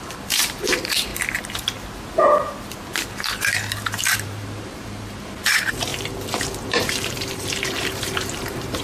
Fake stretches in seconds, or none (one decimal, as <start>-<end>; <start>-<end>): 0.0-1.1; 4.0-8.8

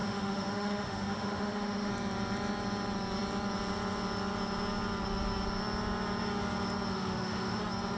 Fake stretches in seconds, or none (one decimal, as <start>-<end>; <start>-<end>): 0.0-1.9; 6.9-7.6

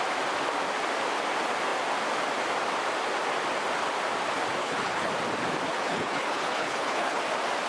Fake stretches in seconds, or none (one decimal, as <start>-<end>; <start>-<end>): 4.6-5.1; 5.7-7.2

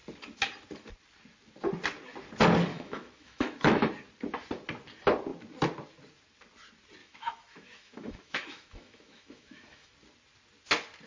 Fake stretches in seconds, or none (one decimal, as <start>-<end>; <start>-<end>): 2.7-3.9; 7.0-9.9

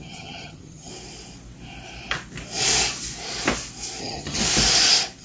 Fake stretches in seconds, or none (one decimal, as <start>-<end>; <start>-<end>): 0.0-0.9; 4.0-4.4

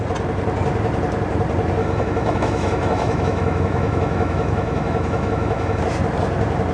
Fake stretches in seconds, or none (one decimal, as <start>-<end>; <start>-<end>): 1.8-5.8

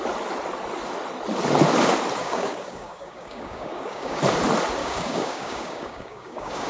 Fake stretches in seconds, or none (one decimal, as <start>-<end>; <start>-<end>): 2.2-4.2; 4.8-6.7

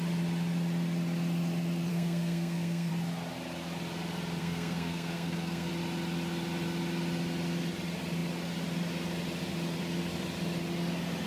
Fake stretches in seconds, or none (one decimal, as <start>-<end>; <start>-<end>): 1.9-2.9; 4.4-5.7